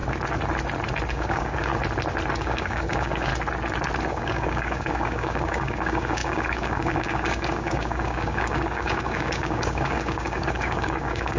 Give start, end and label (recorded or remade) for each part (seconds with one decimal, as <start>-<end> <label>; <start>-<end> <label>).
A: 0.0-1.1 recorded; 1.1-1.7 remade; 1.7-2.4 recorded; 2.4-3.3 remade; 3.3-4.1 recorded; 4.1-11.4 remade